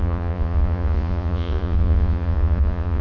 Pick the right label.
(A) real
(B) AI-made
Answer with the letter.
B